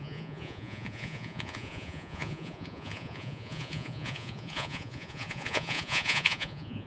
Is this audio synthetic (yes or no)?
yes